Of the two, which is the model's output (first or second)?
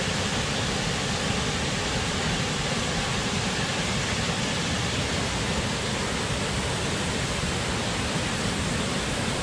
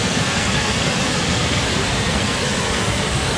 second